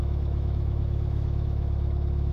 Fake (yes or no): yes